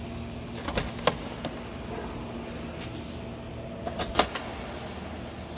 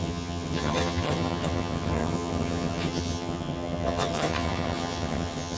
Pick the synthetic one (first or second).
second